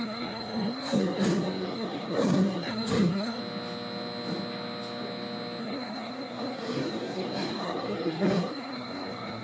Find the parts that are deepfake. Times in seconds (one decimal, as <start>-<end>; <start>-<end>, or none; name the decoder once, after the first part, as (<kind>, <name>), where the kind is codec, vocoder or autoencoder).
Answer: 0.0-3.4 (codec, SNAC); 5.6-9.4